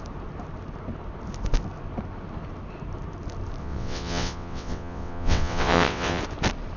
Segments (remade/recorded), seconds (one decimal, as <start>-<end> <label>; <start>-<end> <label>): 0.0-3.6 recorded; 3.6-6.2 remade; 6.2-6.8 recorded